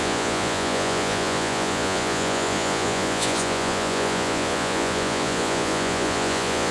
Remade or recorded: remade